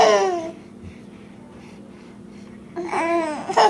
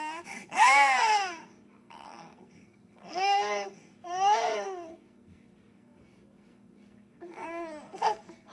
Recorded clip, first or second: first